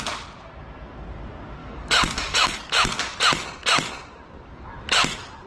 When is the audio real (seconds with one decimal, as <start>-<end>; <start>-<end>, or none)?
0.0-1.6; 2.6-5.5